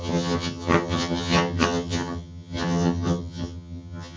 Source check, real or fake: fake